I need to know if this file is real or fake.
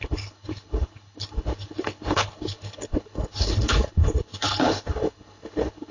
fake